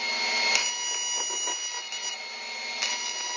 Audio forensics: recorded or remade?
recorded